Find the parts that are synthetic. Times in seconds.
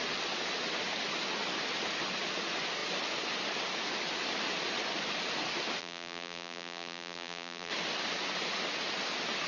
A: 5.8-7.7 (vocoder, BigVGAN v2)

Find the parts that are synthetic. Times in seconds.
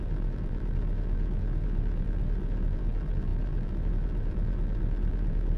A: 0.0-5.6 (vocoder, BigVGAN v2)